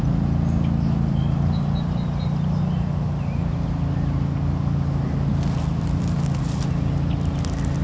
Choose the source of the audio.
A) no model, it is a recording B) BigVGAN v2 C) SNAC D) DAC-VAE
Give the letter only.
A